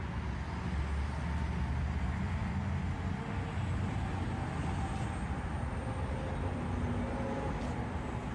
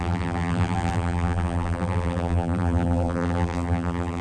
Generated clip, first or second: second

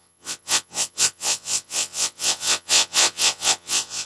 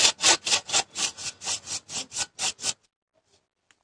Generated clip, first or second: first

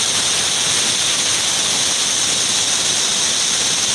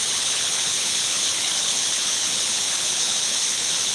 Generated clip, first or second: second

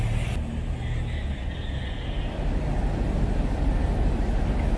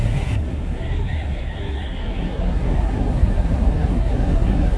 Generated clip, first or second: second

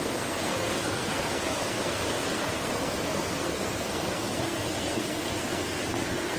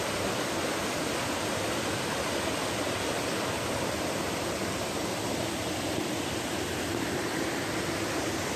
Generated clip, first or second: first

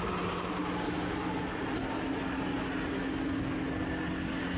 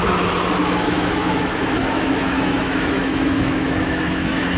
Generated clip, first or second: second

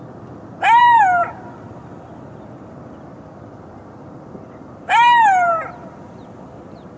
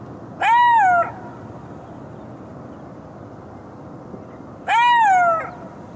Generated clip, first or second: first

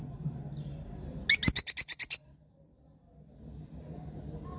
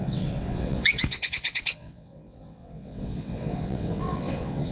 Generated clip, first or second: second